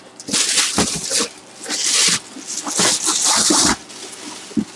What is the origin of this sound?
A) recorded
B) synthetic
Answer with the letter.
A